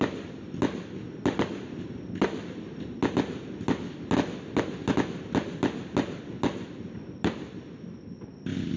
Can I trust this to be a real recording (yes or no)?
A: yes